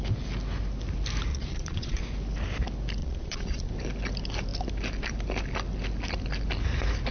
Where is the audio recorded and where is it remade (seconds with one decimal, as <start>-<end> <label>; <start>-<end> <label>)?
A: 0.0-1.3 recorded; 1.3-2.0 remade; 2.0-3.0 recorded; 3.0-3.7 remade; 3.7-7.1 recorded